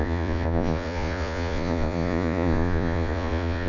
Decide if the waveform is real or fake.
fake